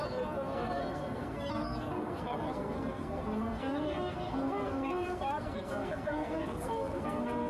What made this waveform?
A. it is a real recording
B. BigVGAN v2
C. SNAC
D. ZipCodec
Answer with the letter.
C